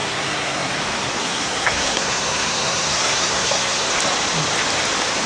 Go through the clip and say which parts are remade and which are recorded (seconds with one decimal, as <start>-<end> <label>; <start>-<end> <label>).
0.0-0.7 remade; 0.7-1.2 recorded; 1.2-3.9 remade; 3.9-5.3 recorded